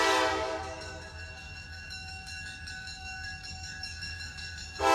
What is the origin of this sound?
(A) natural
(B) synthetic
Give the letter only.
B